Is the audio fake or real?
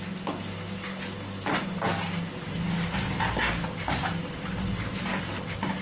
real